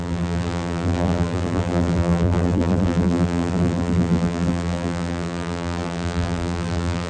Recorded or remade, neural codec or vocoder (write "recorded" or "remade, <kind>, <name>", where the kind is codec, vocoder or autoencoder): remade, vocoder, BigVGAN v2